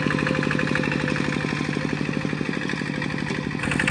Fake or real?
real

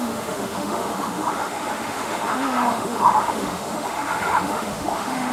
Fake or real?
fake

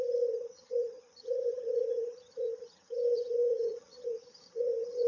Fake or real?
fake